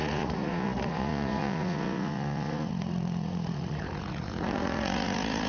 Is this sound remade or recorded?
remade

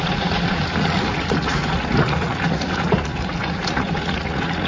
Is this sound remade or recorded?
remade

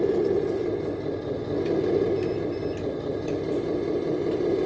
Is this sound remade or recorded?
recorded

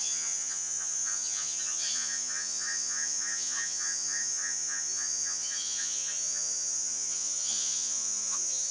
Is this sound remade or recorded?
remade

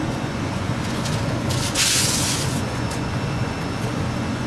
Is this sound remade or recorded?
remade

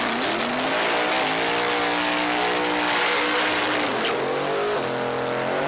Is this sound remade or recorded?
recorded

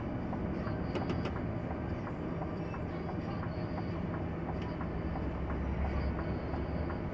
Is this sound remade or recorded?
recorded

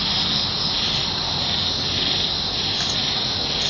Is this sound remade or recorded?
recorded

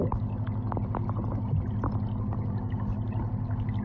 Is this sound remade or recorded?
recorded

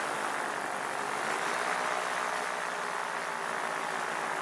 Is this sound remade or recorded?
recorded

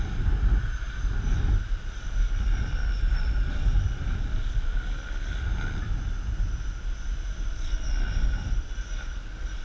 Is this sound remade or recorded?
recorded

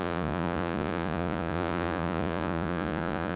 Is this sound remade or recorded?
remade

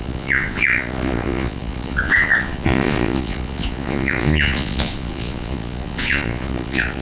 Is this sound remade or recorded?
remade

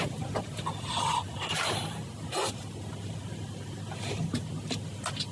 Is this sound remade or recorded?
recorded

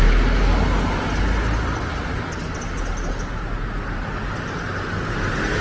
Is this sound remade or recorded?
recorded